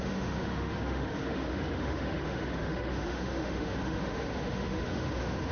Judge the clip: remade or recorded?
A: remade